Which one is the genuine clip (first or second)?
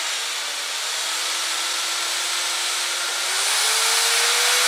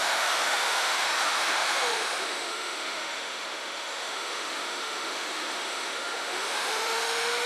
first